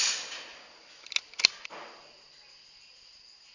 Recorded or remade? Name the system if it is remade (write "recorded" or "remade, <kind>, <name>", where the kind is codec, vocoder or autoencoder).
recorded